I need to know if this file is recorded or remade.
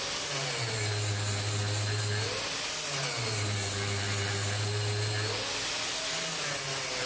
recorded